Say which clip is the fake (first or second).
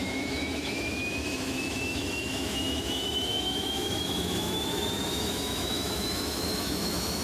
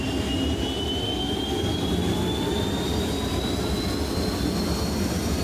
first